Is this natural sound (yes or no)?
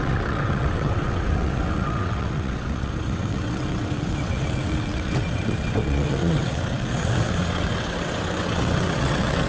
no